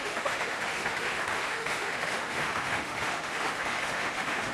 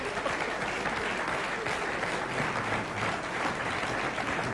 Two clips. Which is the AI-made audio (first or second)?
first